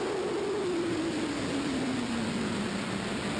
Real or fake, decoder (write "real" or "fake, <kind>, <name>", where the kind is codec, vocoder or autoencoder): real